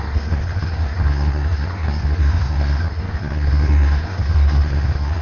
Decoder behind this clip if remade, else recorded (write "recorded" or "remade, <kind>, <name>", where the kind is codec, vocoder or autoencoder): remade, codec, SNAC